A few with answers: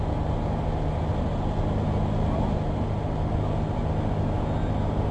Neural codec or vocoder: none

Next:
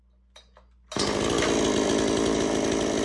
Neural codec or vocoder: none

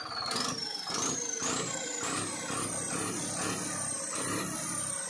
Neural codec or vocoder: none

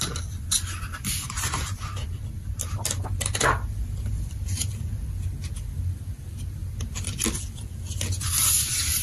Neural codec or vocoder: none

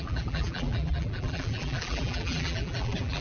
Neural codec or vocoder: vocoder, BigVGAN v2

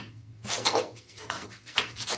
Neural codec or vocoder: codec, SNAC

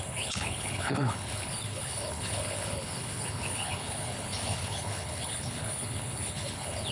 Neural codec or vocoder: codec, HILCodec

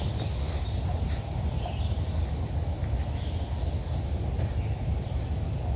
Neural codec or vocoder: none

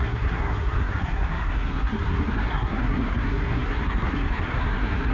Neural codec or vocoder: codec, SNAC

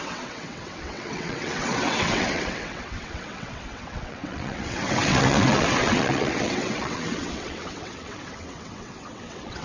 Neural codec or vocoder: vocoder, WaveNeXt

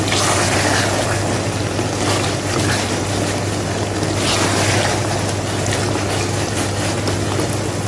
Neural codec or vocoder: none